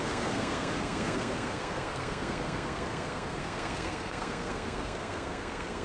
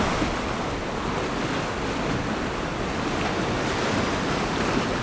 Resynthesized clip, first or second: first